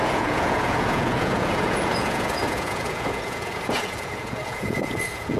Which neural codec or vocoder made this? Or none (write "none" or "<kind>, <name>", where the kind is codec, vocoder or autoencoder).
vocoder, Vocos